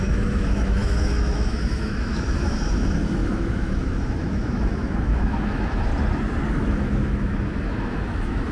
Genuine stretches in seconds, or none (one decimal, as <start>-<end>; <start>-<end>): 5.9-6.7